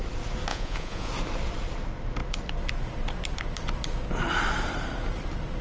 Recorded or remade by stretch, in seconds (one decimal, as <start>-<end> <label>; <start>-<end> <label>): 0.0-0.5 recorded; 0.5-1.1 remade; 1.1-5.6 recorded